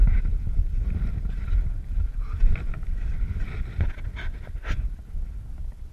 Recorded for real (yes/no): yes